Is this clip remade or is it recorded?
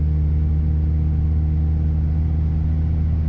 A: recorded